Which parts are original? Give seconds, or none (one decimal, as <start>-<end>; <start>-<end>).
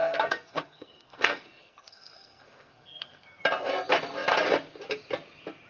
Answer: 3.4-5.7